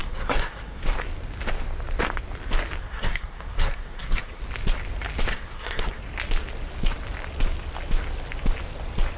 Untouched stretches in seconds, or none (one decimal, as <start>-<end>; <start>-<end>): 0.8-2.8; 4.4-5.3; 6.0-9.2